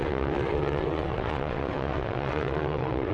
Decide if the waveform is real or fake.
fake